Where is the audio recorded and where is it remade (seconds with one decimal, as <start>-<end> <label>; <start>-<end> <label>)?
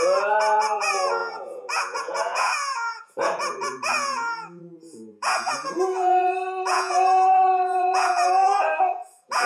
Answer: 0.0-9.5 remade